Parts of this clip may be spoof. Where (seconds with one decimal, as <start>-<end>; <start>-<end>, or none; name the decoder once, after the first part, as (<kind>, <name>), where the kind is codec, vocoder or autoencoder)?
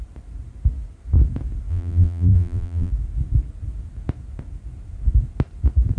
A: 1.7-2.9 (vocoder, BigVGAN v2)